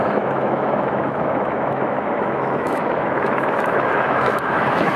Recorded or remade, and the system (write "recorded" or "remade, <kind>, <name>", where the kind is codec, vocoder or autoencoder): remade, autoencoder, DAC-VAE